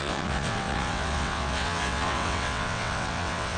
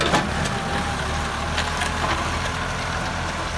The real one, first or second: second